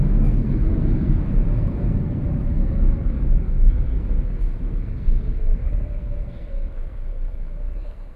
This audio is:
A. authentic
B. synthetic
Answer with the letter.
B